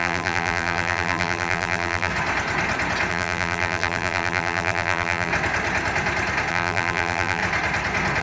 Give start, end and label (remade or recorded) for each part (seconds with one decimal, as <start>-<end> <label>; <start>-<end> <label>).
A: 0.0-2.1 remade; 2.1-3.1 recorded; 3.1-5.3 remade; 5.3-6.5 recorded; 6.5-7.4 remade; 7.4-8.2 recorded